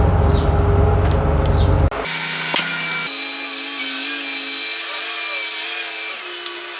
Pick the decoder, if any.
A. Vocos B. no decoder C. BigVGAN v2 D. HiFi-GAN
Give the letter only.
B